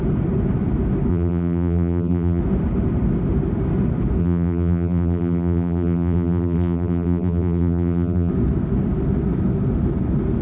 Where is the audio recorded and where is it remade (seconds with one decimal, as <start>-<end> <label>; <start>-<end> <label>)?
0.0-1.1 recorded; 1.1-2.4 remade; 2.4-4.2 recorded; 4.2-8.3 remade; 8.3-10.4 recorded

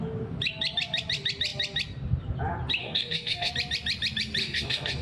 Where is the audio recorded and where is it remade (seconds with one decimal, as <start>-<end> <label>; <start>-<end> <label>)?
0.0-2.8 recorded; 2.8-3.5 remade; 3.5-4.4 recorded; 4.4-5.0 remade

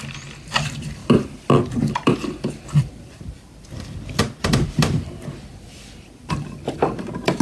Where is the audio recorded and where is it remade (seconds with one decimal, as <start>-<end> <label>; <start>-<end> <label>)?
0.0-1.0 remade; 1.0-1.9 recorded; 1.9-7.4 remade

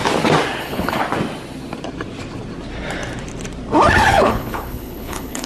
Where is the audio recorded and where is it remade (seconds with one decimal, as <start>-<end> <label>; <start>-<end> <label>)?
0.0-0.6 recorded; 0.6-1.0 remade; 1.0-4.1 recorded; 4.1-5.5 remade